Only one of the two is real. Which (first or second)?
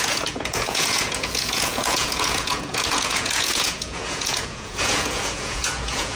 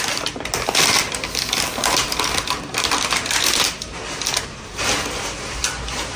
second